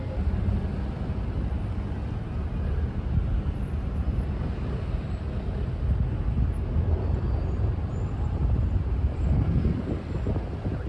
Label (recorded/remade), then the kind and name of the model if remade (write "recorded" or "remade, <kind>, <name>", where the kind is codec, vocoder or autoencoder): recorded